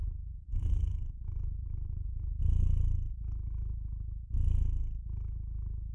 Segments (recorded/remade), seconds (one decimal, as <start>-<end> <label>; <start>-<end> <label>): 0.0-2.4 remade; 2.4-5.9 recorded